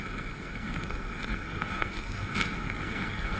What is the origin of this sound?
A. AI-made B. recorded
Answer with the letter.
A